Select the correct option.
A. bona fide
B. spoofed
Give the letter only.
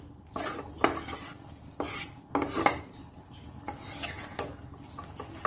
A